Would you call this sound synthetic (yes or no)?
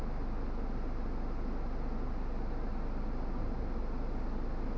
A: no